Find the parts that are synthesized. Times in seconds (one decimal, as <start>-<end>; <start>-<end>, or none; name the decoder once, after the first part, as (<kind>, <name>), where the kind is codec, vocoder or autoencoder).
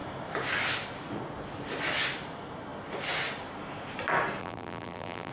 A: 4.4-5.3 (vocoder, BigVGAN v2)